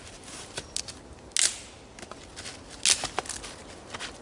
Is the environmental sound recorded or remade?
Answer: recorded